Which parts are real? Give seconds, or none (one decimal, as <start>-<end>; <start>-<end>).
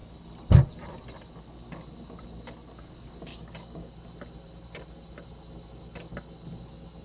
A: 0.0-3.3; 3.9-7.0